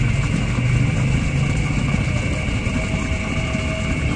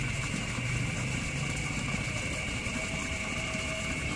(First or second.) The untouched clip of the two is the first